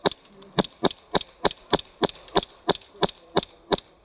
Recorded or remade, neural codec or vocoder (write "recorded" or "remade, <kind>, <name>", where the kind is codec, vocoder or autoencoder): recorded